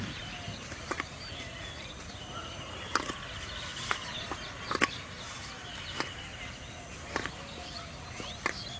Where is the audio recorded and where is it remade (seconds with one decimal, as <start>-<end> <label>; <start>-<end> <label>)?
0.0-1.6 recorded; 1.6-2.7 remade; 2.7-8.8 recorded